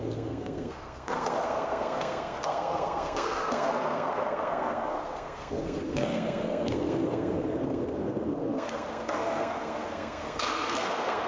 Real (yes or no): no